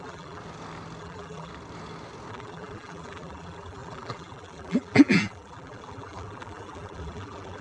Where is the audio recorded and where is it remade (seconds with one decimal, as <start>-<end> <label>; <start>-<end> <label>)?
0.0-0.4 remade; 0.4-1.0 recorded; 1.0-1.5 remade; 1.5-2.3 recorded; 2.3-7.6 remade